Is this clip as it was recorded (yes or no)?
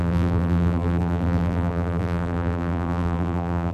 no